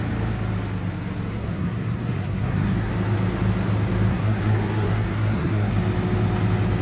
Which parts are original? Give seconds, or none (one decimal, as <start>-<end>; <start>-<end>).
0.0-1.3; 2.9-4.1; 5.7-6.8